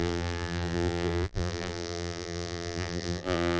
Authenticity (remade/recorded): remade